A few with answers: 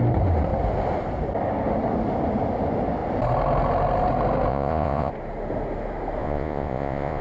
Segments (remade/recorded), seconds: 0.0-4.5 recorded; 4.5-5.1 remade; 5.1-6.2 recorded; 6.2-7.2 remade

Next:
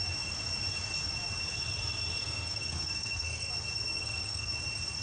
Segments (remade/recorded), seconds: 0.0-2.2 recorded; 2.2-3.5 remade; 3.5-3.9 recorded; 3.9-4.5 remade; 4.5-5.0 recorded

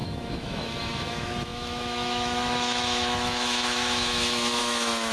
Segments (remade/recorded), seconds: 0.0-5.1 remade

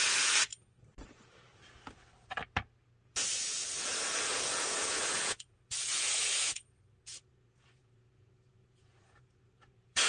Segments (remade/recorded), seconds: 0.0-0.5 remade; 0.5-3.0 recorded; 3.0-10.1 remade